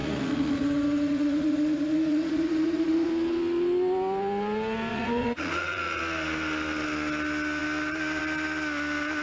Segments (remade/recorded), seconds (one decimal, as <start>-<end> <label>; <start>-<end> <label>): 0.0-3.1 remade; 3.1-4.9 recorded; 4.9-6.0 remade; 6.0-9.2 recorded